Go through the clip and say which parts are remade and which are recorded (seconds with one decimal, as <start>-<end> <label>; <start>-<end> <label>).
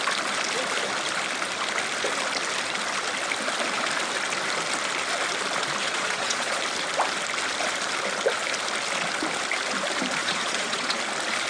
0.0-5.8 recorded; 5.8-6.6 remade; 6.6-10.2 recorded; 10.2-11.0 remade; 11.0-11.5 recorded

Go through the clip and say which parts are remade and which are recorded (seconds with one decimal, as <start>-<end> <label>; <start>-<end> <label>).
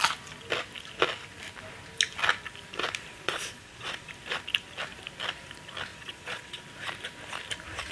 0.0-3.1 recorded; 3.1-4.1 remade; 4.1-5.9 recorded; 5.9-6.6 remade; 6.6-7.9 recorded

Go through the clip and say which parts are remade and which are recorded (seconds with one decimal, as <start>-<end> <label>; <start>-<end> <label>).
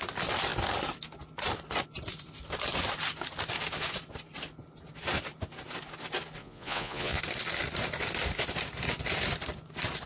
0.0-6.4 recorded; 6.4-7.2 remade; 7.2-10.1 recorded